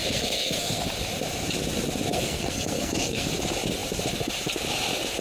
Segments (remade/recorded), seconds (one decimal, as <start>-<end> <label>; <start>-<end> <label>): 0.0-0.8 remade; 0.8-2.1 recorded; 2.1-3.3 remade; 3.3-5.2 recorded

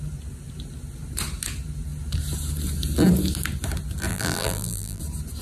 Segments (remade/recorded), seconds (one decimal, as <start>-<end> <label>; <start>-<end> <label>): 0.0-4.1 recorded; 4.1-5.0 remade; 5.0-5.4 recorded